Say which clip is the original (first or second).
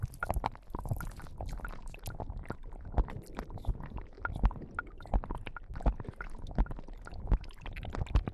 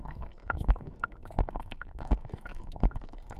first